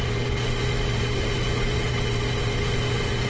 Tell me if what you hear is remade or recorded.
remade